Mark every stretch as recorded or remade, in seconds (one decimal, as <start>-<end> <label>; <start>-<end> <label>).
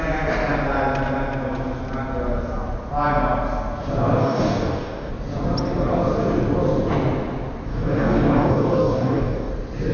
0.0-4.2 recorded; 4.2-5.1 remade; 5.1-7.7 recorded; 7.7-9.5 remade; 9.5-9.9 recorded